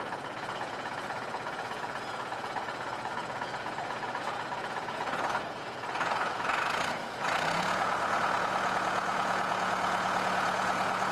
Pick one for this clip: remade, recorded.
remade